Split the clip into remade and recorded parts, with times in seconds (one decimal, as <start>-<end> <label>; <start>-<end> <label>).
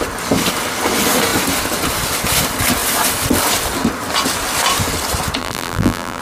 0.0-5.4 recorded; 5.4-6.2 remade